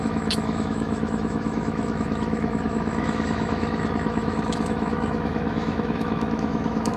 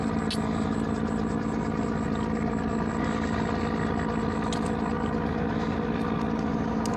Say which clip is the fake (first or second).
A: first